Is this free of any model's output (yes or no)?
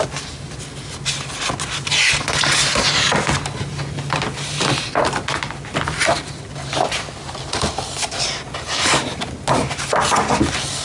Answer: yes